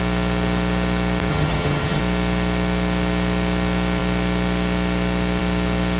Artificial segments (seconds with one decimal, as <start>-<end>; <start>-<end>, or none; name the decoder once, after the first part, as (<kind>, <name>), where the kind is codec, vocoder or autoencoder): 1.3-2.0 (vocoder, HiFi-GAN)